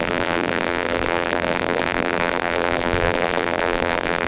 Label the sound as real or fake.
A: fake